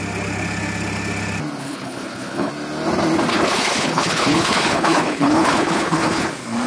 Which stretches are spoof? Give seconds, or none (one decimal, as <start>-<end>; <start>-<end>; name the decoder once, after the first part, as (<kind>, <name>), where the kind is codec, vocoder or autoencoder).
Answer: 1.6-2.5 (codec, HILCodec); 3.3-6.3